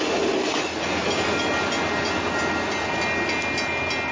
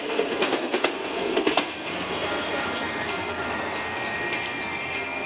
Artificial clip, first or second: second